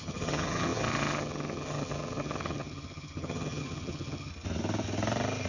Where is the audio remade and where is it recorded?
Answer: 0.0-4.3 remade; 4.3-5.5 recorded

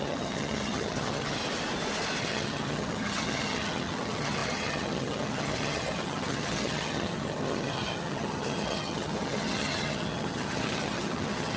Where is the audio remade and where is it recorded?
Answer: 0.0-1.4 remade; 1.4-2.2 recorded; 2.2-11.6 remade

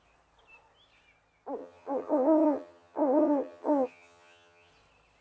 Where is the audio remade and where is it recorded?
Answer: 0.0-1.6 recorded; 1.6-4.7 remade; 4.7-5.2 recorded

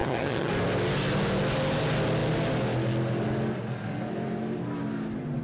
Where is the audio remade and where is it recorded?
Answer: 0.0-0.5 remade; 0.5-5.4 recorded